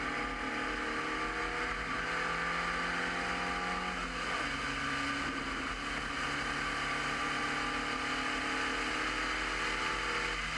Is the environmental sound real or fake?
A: real